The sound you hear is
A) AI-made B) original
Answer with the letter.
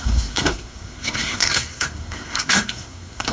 A